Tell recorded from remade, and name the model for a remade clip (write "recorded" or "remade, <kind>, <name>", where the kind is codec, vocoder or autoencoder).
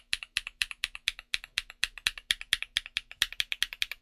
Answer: recorded